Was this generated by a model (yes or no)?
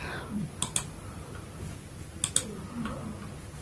no